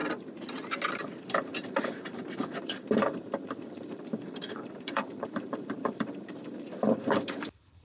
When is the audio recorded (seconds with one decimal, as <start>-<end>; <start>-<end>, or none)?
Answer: 0.0-0.9